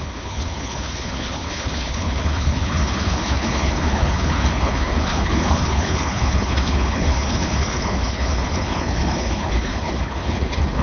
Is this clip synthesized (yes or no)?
yes